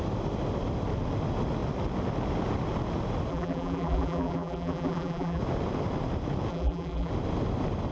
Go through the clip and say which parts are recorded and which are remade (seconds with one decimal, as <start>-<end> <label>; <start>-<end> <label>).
0.0-3.3 recorded; 3.3-5.4 remade; 5.4-6.5 recorded; 6.5-7.1 remade; 7.1-7.9 recorded